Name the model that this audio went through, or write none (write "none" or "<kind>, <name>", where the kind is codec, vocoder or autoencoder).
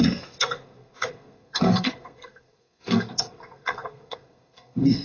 codec, SNAC